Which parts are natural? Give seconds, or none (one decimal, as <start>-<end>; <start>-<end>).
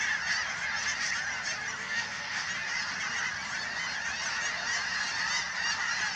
0.0-1.8; 2.5-6.2